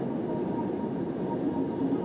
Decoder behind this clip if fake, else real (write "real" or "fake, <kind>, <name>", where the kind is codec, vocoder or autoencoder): real